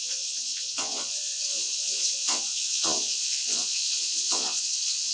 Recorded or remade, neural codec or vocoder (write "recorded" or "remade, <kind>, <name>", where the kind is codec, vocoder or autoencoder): remade, vocoder, Vocos